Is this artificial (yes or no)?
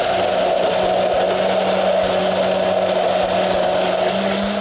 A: no